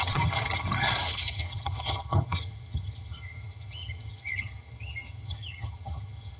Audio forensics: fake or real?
fake